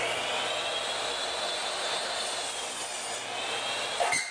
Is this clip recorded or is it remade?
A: recorded